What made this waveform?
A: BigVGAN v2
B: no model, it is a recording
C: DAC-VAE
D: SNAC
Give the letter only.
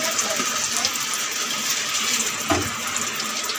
B